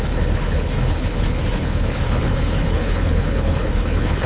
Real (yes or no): no